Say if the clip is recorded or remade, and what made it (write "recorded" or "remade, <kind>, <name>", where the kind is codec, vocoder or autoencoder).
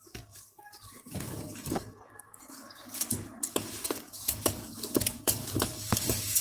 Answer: remade, codec, DAC